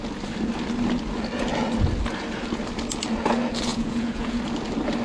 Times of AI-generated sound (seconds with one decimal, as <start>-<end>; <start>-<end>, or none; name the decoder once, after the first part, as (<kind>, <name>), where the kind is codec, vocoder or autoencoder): 3.7-4.4 (vocoder, Vocos)